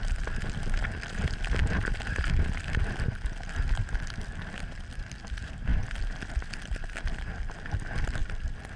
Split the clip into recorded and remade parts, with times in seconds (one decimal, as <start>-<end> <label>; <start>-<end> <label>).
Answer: 0.0-8.8 recorded